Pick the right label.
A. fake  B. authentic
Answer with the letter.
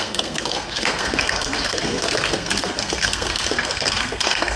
A